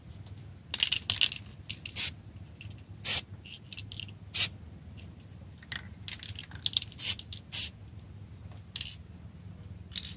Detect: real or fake real